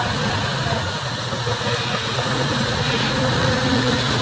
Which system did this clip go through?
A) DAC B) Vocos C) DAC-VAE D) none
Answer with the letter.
B